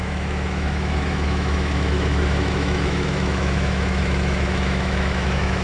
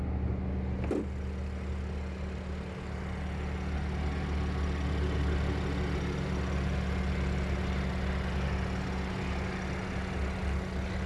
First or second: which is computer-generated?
first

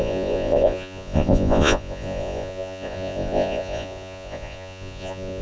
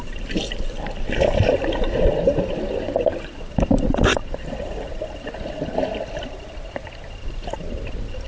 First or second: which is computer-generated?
first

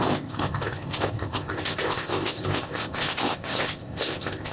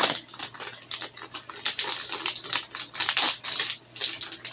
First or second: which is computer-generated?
first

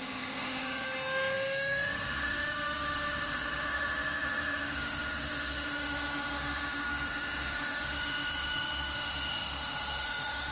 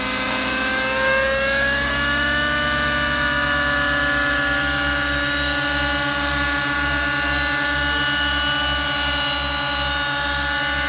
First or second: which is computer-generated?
first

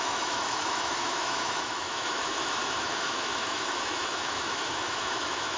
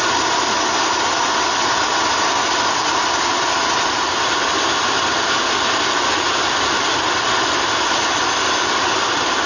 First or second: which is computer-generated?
first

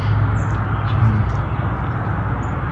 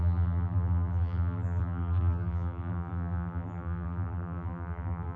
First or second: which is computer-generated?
second